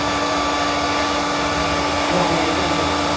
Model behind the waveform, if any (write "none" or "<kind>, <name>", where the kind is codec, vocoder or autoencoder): none